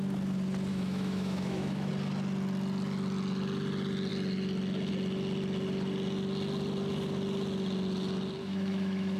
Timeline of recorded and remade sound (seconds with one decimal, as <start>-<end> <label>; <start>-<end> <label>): 0.0-0.7 recorded; 0.7-1.9 remade; 1.9-8.4 recorded; 8.4-9.2 remade